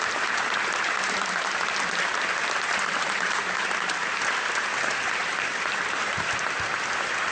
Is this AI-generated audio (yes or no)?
no